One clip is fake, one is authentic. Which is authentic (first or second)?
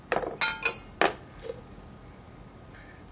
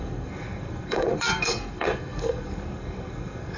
first